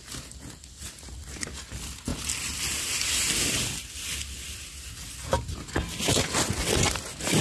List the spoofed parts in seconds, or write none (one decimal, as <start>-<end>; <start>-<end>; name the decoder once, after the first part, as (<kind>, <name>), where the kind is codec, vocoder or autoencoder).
none